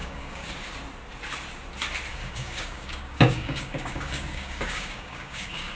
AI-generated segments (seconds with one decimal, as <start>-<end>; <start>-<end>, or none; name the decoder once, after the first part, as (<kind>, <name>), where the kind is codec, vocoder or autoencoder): 0.0-0.5 (codec, DAC); 2.1-5.7